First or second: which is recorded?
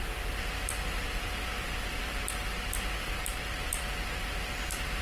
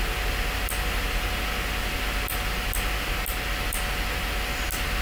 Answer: second